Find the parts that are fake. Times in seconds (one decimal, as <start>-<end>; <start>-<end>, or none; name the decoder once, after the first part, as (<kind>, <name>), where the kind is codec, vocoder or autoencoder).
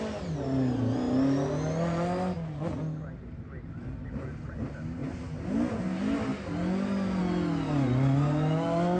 none